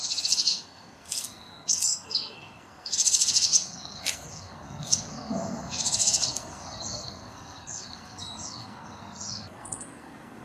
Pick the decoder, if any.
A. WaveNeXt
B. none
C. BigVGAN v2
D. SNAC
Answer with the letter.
D